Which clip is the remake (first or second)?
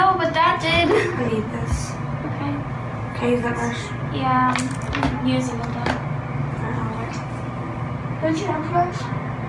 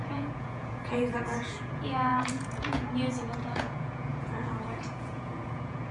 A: second